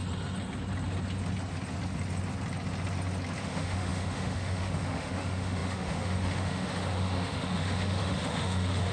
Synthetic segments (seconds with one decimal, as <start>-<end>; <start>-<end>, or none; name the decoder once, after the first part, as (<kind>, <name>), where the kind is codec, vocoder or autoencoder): 3.4-8.9 (autoencoder, DAC-VAE)

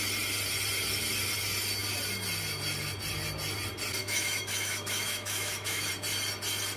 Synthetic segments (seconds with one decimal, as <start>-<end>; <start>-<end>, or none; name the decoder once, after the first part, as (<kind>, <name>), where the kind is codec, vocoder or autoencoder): 4.0-5.9 (autoencoder, DAC-VAE)

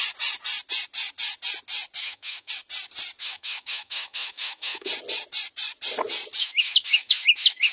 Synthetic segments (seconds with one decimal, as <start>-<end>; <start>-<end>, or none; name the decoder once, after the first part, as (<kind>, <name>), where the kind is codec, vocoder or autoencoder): 2.0-2.5 (autoencoder, DAC-VAE); 3.2-4.9; 6.4-7.7

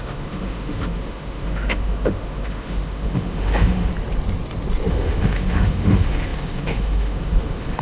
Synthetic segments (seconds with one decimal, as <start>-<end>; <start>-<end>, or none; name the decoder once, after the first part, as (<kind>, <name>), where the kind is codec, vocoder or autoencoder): 0.0-3.9 (autoencoder, DAC-VAE); 4.9-7.8

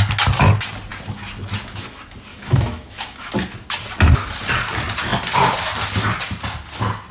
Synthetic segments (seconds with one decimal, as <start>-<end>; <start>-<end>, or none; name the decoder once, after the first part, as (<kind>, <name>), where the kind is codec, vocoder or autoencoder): 2.3-3.3 (autoencoder, DAC-VAE)

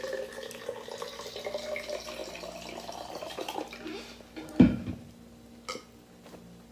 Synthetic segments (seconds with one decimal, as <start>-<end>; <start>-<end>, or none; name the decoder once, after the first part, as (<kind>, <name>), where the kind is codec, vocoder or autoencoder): none

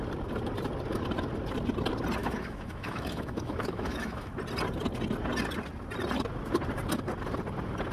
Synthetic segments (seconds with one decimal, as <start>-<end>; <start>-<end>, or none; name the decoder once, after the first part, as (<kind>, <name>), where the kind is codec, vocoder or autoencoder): 2.2-4.3 (autoencoder, DAC-VAE)

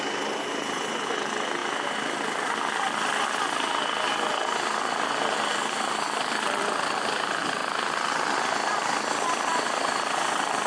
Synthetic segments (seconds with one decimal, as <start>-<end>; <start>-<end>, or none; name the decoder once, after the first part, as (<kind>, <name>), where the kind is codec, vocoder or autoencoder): none